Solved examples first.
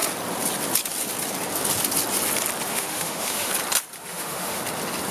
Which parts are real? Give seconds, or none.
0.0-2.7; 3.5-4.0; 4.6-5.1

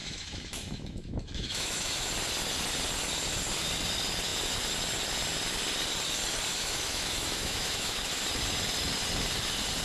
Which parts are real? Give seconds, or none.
2.1-6.5; 8.2-9.8

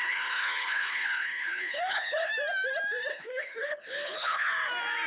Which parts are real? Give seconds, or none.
2.3-3.1; 4.5-5.1

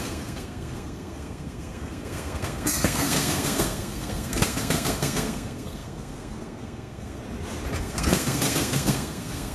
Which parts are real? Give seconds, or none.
7.2-7.8

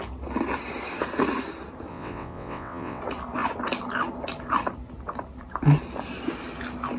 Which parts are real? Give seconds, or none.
0.0-1.9; 3.0-7.0